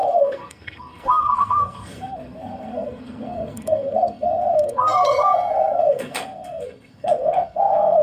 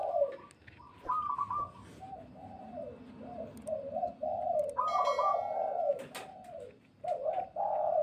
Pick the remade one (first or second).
first